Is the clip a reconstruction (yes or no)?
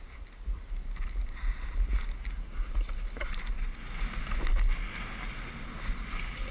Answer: no